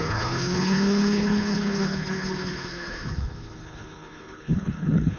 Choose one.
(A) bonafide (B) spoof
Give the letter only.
B